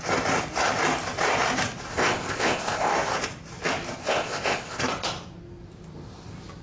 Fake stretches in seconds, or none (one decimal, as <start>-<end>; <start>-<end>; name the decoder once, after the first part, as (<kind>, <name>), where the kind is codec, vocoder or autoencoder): 1.9-2.9 (codec, ZipCodec); 4.0-4.8